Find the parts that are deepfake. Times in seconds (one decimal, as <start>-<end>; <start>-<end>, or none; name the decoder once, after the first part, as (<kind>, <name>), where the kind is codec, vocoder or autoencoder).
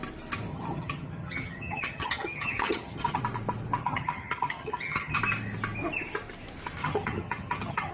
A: 0.5-3.2 (vocoder, HiFi-GAN); 3.8-5.2; 6.8-7.9